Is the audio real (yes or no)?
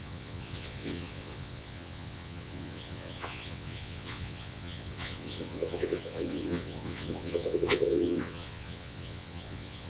no